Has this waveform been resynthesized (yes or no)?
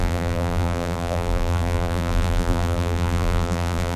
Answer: yes